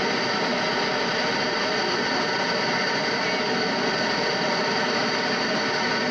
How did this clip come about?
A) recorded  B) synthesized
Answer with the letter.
A